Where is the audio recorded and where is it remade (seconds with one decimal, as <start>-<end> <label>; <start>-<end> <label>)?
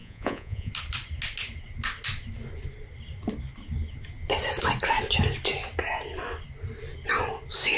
0.0-0.7 remade; 0.7-7.8 recorded